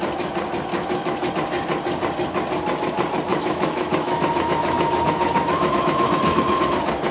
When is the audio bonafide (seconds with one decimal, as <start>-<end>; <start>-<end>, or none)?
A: 0.0-0.7; 1.3-3.3; 6.6-7.1

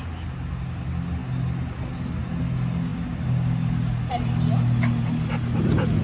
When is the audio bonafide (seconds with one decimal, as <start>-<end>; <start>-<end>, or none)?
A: 0.0-6.0